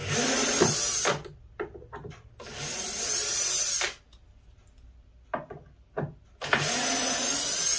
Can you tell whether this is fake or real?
real